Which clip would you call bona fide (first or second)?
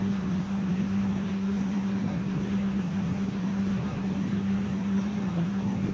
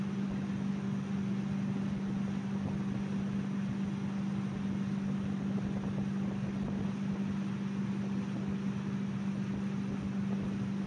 second